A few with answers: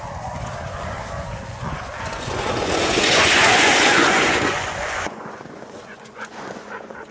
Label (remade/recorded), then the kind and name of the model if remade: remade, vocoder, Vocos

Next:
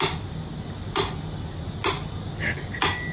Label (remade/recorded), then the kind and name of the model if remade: recorded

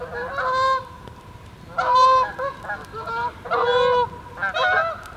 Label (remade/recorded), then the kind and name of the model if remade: recorded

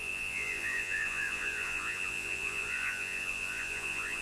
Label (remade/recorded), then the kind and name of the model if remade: remade, vocoder, Vocos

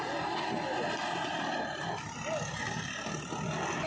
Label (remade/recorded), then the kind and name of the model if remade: recorded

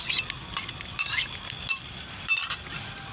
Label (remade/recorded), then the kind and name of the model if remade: recorded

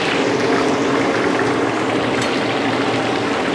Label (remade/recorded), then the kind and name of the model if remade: recorded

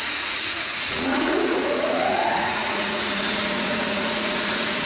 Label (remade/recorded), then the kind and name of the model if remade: remade, vocoder, Vocos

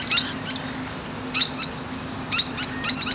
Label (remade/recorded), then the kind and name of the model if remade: recorded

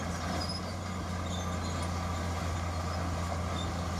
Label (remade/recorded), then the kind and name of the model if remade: recorded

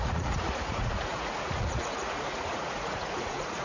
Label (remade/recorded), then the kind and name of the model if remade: remade, vocoder, Vocos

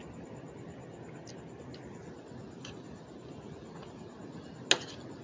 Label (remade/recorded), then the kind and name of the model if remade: recorded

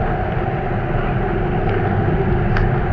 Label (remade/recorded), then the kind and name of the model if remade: recorded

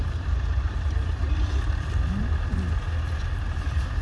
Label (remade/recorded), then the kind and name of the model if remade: recorded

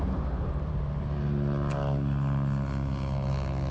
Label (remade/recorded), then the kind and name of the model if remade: recorded